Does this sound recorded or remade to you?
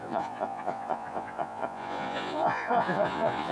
remade